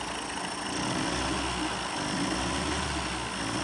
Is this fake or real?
real